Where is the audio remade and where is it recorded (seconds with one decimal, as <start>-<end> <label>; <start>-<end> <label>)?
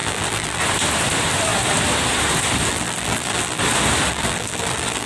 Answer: 0.0-0.6 remade; 0.6-2.7 recorded; 2.7-3.6 remade; 3.6-4.1 recorded; 4.1-5.1 remade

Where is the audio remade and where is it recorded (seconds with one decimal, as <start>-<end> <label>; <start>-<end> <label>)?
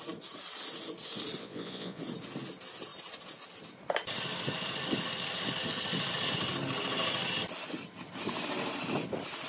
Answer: 0.0-1.4 recorded; 1.4-2.0 remade; 2.0-9.5 recorded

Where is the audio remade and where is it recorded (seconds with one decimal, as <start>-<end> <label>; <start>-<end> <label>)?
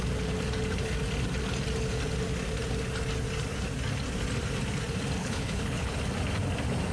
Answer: 0.0-5.2 recorded; 5.2-6.0 remade; 6.0-6.9 recorded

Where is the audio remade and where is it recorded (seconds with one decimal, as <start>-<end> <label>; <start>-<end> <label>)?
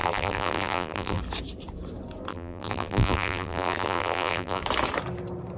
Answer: 0.0-1.2 remade; 1.2-2.3 recorded; 2.3-4.6 remade; 4.6-5.6 recorded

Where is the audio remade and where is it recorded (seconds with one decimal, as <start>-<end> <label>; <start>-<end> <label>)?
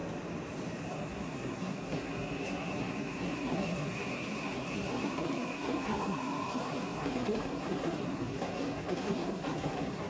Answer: 0.0-0.9 recorded; 0.9-10.1 remade